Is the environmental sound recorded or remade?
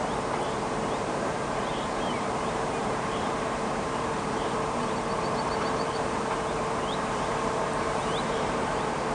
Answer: remade